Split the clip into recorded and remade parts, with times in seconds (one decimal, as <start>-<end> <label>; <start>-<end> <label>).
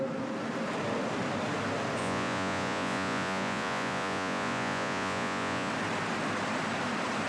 0.0-2.0 recorded; 2.0-5.7 remade; 5.7-7.3 recorded